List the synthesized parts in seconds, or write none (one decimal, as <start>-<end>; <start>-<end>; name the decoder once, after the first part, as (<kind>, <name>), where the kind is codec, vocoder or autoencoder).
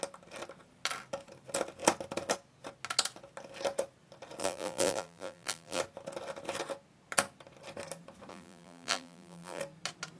4.4-5.8 (vocoder, BigVGAN v2); 8.3-9.6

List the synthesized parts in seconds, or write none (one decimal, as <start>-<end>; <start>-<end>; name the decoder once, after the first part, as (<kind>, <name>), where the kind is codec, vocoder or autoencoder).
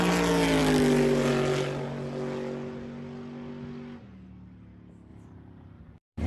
5.1-6.3 (vocoder, BigVGAN v2)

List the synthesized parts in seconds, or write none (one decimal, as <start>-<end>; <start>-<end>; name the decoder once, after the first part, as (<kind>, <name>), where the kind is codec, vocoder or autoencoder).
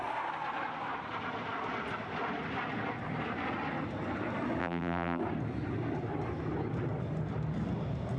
4.6-5.2 (vocoder, BigVGAN v2)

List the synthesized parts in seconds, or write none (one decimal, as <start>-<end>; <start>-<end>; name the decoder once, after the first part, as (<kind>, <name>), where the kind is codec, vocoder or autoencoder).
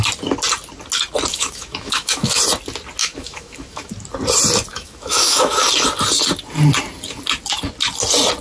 1.3-2.4 (autoencoder, DAC-VAE); 3.0-3.9; 4.7-5.5